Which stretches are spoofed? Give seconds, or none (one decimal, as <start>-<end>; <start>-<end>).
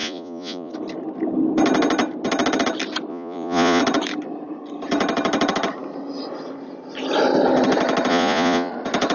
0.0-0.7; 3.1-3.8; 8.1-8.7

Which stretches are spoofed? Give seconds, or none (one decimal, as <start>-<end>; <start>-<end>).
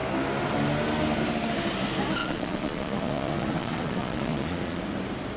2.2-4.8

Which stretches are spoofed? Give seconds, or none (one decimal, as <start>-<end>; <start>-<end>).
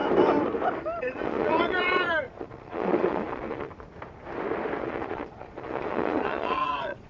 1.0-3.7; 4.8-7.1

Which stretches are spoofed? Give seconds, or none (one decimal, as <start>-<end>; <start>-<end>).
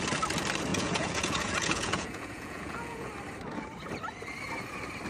0.7-3.1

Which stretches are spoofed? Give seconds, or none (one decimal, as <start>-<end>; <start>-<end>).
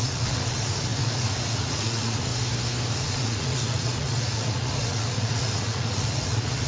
0.0-2.3; 2.9-6.7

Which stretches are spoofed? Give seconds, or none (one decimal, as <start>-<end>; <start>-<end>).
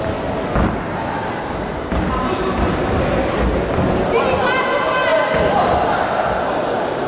none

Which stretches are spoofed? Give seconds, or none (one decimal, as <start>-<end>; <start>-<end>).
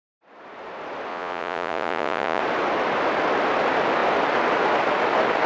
1.1-2.4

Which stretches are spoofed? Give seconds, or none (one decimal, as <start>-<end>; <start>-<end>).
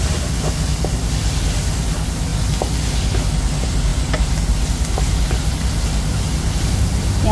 none